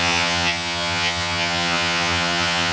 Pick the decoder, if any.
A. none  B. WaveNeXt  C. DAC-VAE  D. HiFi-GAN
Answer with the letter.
D